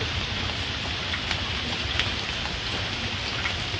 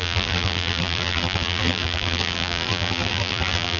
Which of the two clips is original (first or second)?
first